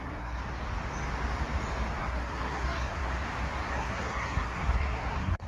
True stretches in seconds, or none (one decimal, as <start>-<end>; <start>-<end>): 0.4-2.0; 3.1-3.7